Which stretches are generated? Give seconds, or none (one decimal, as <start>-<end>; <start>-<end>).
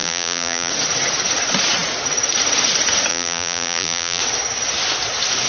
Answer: 0.0-0.7; 3.1-4.2